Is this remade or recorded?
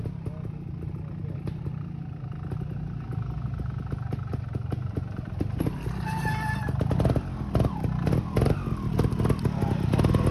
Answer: recorded